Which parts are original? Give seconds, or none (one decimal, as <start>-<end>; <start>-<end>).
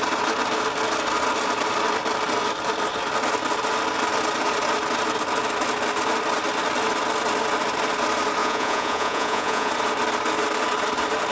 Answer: 0.0-8.4; 9.7-11.3